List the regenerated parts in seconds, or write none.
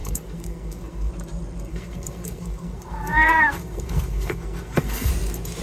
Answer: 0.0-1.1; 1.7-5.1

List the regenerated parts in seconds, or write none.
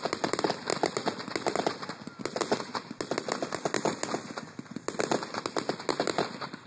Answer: none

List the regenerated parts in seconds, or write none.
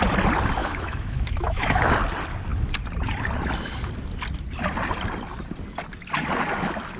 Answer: 0.6-1.9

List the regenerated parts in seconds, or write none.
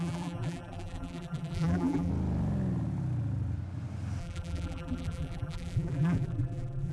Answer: 0.0-2.1; 4.2-6.9